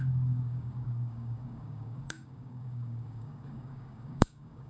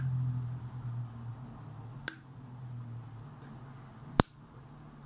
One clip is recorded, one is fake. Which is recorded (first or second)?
second